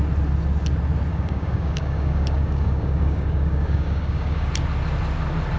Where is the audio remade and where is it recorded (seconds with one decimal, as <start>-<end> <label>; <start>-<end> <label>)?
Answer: 0.0-1.1 recorded; 1.1-4.5 remade; 4.5-5.6 recorded